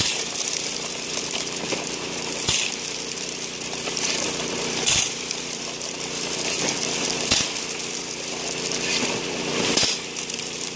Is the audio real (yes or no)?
no